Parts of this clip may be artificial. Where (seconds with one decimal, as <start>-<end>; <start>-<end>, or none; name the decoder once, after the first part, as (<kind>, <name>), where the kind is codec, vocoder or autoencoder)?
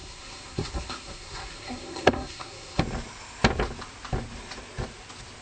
0.0-2.8 (codec, SNAC)